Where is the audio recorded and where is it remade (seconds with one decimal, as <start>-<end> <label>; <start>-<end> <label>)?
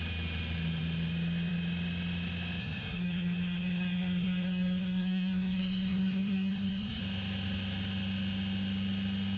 0.0-2.6 recorded; 2.6-7.0 remade; 7.0-9.4 recorded